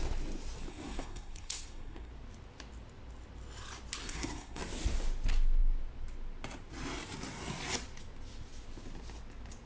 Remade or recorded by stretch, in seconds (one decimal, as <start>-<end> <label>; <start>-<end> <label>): 0.0-0.7 recorded; 0.7-2.1 remade; 2.1-4.0 recorded; 4.0-4.6 remade; 4.6-9.7 recorded